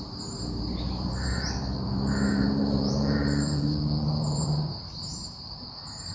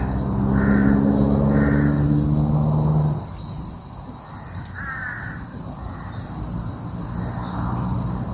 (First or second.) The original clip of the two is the second